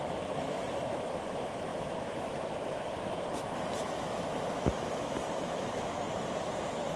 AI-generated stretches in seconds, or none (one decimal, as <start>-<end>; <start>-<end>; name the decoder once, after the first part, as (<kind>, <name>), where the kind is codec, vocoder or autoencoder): 0.0-7.0 (autoencoder, DAC-VAE)